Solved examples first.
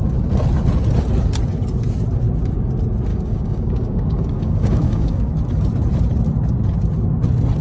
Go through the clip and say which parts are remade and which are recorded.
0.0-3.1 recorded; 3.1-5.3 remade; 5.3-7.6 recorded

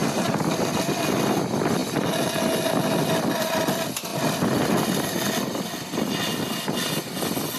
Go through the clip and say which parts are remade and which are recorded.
0.0-0.6 remade; 0.6-7.6 recorded

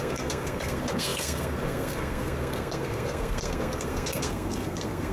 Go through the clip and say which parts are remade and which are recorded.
0.0-5.1 remade

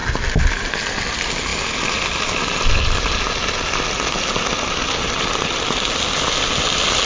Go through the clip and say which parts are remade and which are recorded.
0.0-7.1 recorded

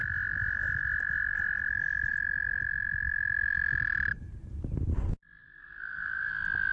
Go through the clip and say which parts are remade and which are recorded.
0.0-5.4 recorded; 5.4-6.3 remade; 6.3-6.7 recorded

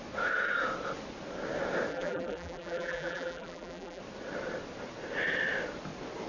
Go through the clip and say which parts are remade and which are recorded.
0.0-1.9 recorded; 1.9-4.0 remade; 4.0-6.3 recorded